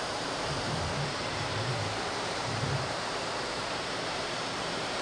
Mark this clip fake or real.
fake